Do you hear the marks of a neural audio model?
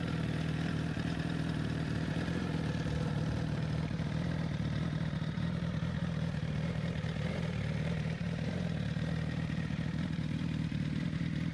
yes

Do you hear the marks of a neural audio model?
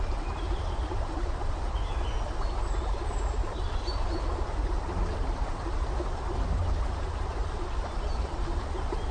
no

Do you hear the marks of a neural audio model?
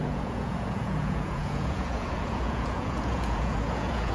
yes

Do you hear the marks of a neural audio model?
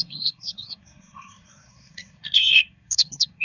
yes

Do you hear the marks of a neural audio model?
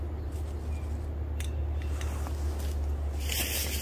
no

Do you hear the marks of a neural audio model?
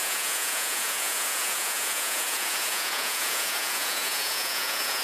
yes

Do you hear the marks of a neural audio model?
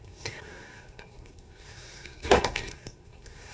yes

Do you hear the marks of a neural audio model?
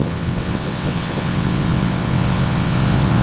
yes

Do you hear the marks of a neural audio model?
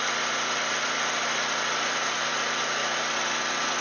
no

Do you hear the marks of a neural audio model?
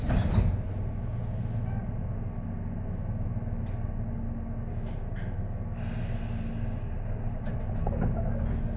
no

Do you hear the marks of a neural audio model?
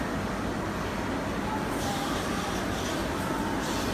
no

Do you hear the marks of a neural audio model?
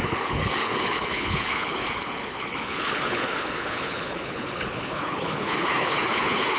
yes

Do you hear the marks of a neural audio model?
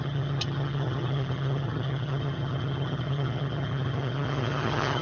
yes